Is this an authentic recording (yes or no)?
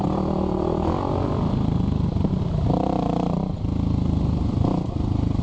yes